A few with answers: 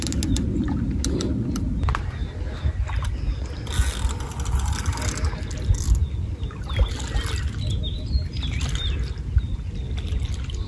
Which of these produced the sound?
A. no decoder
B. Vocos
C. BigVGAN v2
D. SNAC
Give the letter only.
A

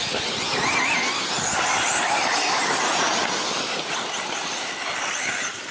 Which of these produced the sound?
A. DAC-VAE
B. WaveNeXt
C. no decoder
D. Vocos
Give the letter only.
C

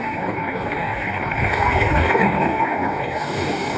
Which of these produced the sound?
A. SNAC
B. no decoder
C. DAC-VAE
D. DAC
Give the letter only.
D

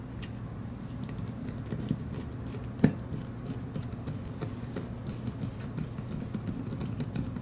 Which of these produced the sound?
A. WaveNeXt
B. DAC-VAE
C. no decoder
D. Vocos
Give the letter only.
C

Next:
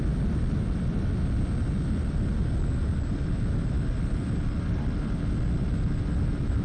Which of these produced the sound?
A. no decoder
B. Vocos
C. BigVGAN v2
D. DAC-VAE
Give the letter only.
A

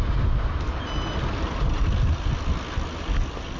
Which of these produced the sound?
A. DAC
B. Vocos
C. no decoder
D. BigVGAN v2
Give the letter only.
C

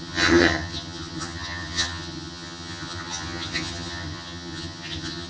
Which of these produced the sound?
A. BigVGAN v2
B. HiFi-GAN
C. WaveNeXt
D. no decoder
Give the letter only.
B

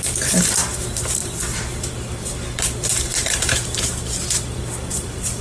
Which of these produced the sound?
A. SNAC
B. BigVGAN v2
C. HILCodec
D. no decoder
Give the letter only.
B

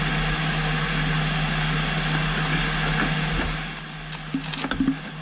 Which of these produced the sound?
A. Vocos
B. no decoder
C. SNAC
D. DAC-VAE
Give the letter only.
B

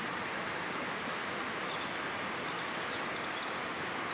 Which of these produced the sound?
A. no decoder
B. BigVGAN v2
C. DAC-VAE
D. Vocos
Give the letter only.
A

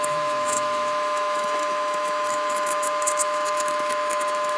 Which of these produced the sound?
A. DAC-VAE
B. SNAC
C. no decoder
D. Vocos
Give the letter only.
A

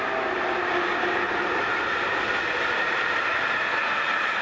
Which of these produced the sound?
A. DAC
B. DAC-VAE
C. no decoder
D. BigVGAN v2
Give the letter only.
C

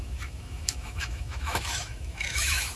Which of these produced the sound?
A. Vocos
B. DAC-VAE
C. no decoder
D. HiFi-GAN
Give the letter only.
B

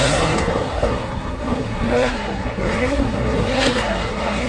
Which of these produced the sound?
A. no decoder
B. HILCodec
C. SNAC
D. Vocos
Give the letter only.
C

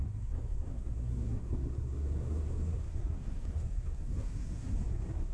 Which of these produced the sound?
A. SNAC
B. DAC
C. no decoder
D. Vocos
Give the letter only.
A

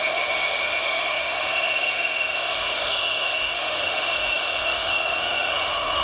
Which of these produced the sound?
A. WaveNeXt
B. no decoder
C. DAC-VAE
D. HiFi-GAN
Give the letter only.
C